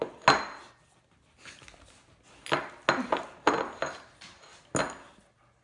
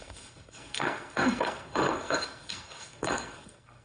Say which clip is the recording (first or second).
first